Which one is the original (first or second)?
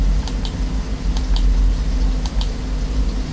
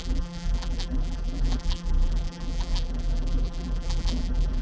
first